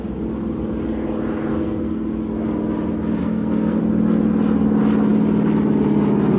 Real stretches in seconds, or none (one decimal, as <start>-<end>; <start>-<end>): 0.0-1.5; 2.1-3.2; 3.8-6.4